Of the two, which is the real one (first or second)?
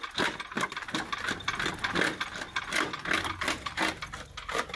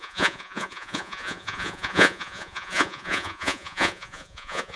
first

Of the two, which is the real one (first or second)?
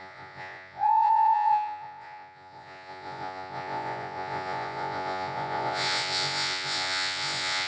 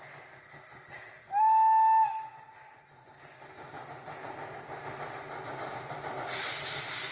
second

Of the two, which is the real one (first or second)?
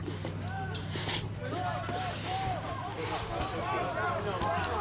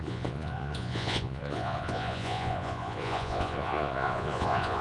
first